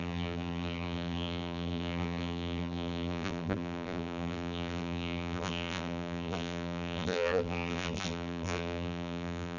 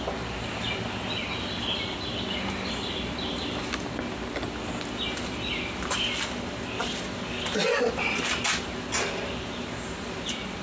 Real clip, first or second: second